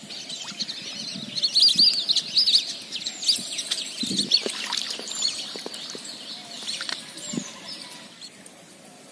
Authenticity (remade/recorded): recorded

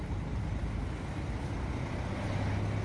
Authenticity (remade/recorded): recorded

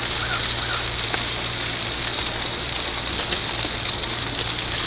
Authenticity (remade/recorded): remade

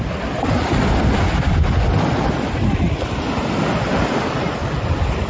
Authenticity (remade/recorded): recorded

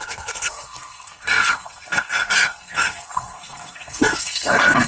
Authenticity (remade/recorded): remade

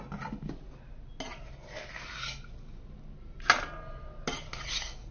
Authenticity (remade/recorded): recorded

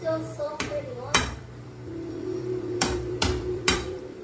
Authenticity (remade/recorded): remade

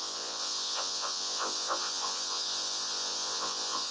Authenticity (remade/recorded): remade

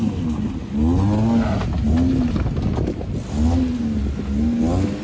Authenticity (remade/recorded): recorded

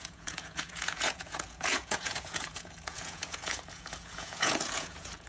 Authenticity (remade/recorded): remade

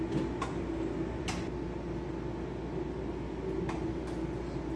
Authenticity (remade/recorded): recorded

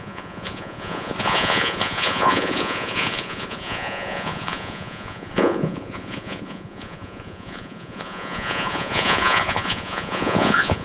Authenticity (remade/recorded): remade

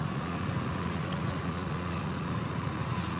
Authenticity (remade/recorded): remade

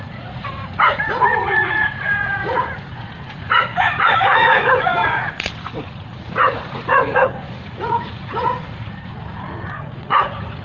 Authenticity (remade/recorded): remade